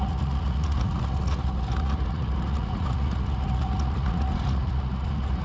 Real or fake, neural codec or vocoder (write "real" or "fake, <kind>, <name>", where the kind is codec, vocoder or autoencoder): fake, vocoder, Vocos